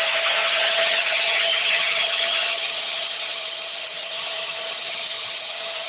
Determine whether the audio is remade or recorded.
remade